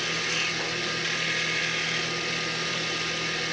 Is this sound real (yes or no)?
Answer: yes